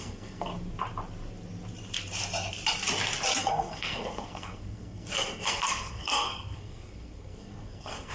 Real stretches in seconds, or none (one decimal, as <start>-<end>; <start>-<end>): 0.5-3.4